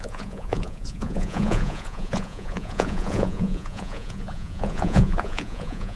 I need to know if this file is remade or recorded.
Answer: remade